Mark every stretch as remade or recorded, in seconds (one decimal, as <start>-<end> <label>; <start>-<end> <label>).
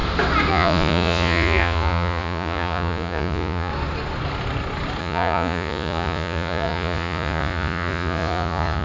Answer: 0.0-0.5 recorded; 0.5-3.7 remade; 3.7-5.0 recorded; 5.0-8.8 remade